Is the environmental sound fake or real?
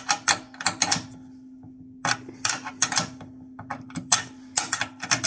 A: real